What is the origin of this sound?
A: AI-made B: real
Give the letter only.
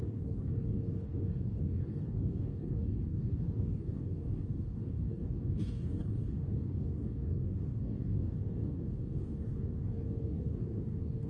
A